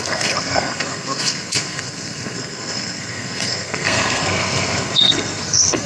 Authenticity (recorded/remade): remade